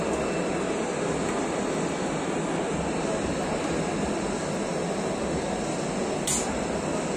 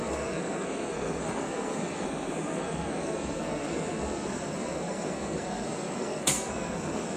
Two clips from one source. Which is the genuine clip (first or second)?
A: first